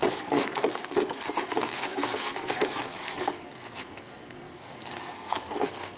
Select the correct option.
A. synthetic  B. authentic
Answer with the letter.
A